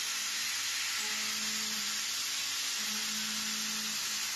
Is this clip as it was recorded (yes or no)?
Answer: yes